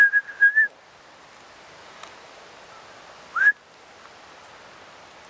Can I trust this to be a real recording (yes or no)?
yes